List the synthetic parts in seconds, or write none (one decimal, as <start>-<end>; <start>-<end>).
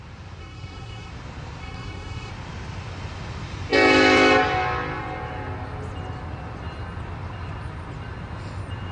0.4-1.1; 1.6-2.3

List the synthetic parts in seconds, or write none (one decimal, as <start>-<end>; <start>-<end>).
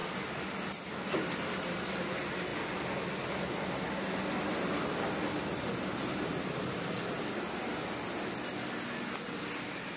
none